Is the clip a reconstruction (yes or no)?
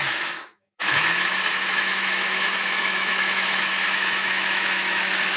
yes